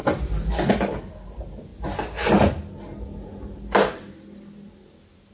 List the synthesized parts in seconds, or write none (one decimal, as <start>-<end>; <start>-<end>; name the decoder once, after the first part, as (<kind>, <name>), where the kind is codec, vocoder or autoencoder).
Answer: none